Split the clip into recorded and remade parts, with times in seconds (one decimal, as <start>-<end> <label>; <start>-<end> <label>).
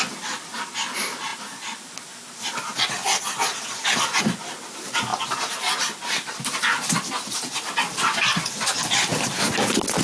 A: 0.0-10.0 recorded